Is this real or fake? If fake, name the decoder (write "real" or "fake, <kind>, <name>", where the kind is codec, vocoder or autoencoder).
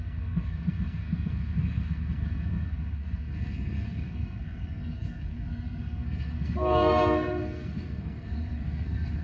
fake, codec, SNAC